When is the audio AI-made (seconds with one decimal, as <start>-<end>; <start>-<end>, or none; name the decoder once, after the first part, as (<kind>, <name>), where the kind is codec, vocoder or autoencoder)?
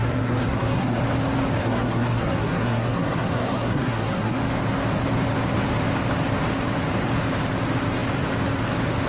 0.0-1.0 (codec, SNAC); 1.6-4.4